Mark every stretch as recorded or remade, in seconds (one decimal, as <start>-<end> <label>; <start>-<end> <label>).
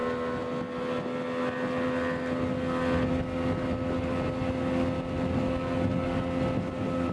0.0-7.1 recorded